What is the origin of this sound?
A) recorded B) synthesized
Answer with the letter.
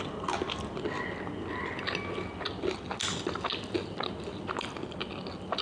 A